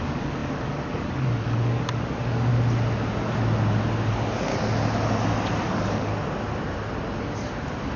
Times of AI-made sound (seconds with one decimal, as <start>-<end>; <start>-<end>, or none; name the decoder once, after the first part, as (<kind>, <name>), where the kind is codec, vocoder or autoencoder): 0.0-2.5 (codec, DAC); 4.1-4.5; 5.6-6.1